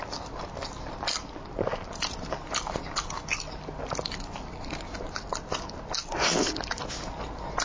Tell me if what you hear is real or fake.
real